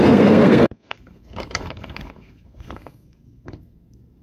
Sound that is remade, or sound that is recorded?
remade